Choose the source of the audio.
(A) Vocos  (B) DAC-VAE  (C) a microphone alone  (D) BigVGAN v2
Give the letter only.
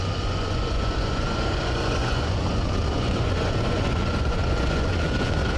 A